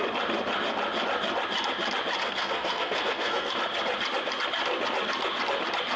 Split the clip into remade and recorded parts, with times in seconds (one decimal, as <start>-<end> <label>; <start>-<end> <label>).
0.0-2.2 recorded; 2.2-3.5 remade; 3.5-6.0 recorded